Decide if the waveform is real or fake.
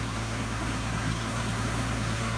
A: fake